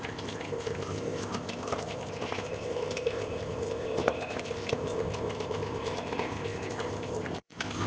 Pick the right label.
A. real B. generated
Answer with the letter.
B